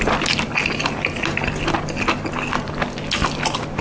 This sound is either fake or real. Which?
real